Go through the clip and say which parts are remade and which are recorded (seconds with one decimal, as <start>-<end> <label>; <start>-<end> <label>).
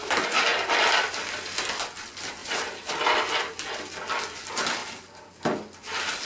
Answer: 0.0-2.4 recorded; 2.4-3.2 remade; 3.2-4.8 recorded; 4.8-5.4 remade; 5.4-6.3 recorded